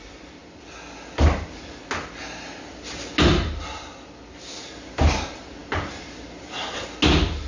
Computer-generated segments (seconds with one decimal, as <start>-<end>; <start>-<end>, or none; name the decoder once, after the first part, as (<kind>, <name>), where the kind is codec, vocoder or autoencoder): none